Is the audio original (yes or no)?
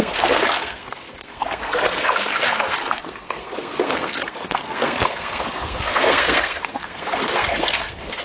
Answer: no